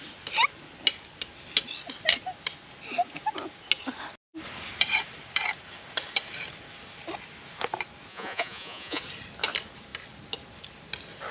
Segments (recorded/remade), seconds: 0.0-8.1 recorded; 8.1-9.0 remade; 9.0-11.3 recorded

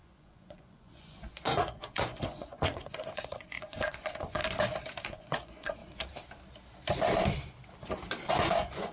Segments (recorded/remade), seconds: 0.0-4.4 remade; 4.4-5.0 recorded; 5.0-5.8 remade; 5.8-8.3 recorded; 8.3-8.9 remade

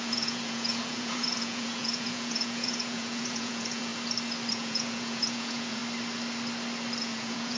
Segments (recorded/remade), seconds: 0.0-3.9 remade; 3.9-4.5 recorded; 4.5-5.8 remade; 5.8-7.0 recorded; 7.0-7.6 remade

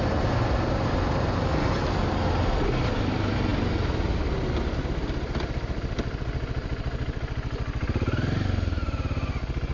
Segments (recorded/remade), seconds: 0.0-9.7 recorded

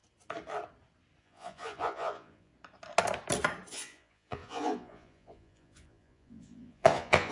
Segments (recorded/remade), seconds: 0.0-1.2 recorded; 1.2-2.5 remade; 2.5-3.7 recorded; 3.7-7.3 remade

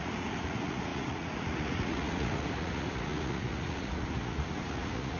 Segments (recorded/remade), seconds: 0.0-5.2 remade

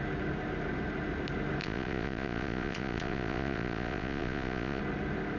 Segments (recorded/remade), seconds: 0.0-1.6 recorded; 1.6-4.8 remade; 4.8-5.4 recorded